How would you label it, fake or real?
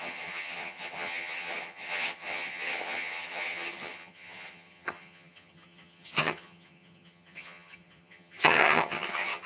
fake